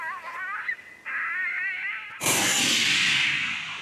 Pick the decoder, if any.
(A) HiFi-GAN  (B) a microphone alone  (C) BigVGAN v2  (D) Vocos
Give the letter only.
B